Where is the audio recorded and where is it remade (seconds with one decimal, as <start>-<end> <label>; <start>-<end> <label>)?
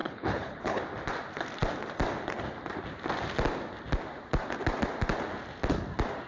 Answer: 0.0-0.8 remade; 0.8-6.3 recorded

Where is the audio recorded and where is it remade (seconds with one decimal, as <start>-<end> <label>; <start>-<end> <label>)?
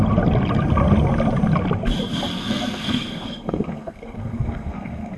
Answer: 0.0-2.3 recorded; 2.3-5.2 remade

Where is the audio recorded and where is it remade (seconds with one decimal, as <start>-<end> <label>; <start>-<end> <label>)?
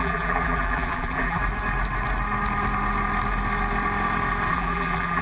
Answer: 0.0-1.4 remade; 1.4-4.5 recorded; 4.5-5.2 remade